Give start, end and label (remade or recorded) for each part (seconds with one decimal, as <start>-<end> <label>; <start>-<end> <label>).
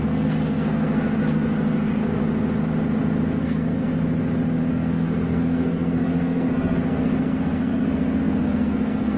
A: 0.0-2.2 remade; 2.2-3.4 recorded; 3.4-3.9 remade; 3.9-4.7 recorded; 4.7-9.2 remade